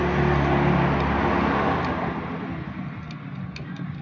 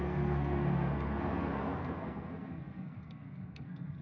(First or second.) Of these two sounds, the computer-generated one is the second